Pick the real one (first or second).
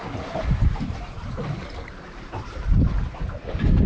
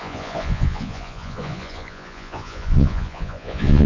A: first